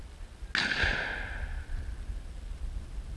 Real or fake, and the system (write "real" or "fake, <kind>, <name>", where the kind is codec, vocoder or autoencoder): real